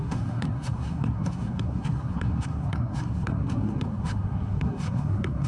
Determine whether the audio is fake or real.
fake